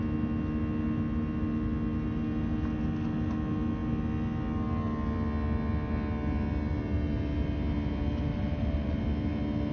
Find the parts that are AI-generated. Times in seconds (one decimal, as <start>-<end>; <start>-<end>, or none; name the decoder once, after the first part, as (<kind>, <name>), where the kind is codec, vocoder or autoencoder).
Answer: 8.3-9.0 (vocoder, BigVGAN v2)